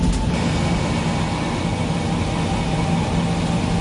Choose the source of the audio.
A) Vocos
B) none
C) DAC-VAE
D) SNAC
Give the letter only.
B